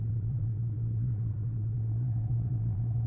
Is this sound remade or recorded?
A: remade